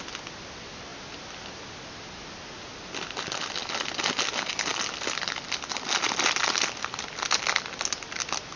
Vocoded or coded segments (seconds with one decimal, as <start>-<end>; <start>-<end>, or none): none